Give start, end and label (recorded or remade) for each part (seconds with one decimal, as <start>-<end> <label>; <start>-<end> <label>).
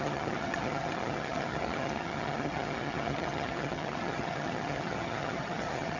0.0-6.0 remade